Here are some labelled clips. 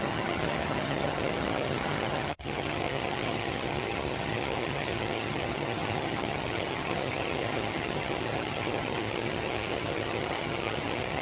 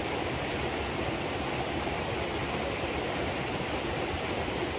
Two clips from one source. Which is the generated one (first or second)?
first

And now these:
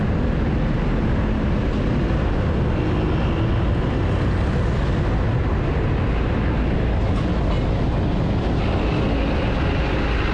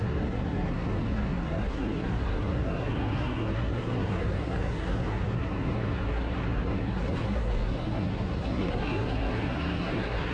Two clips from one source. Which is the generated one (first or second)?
second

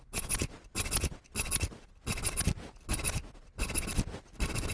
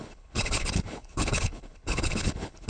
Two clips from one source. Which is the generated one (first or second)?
second